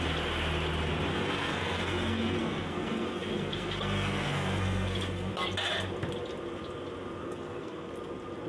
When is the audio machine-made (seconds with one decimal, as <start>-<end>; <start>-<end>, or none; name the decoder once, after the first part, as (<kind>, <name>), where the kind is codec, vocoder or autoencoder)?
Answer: 1.1-5.3 (codec, SNAC); 7.2-7.9